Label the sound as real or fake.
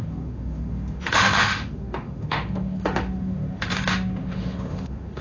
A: fake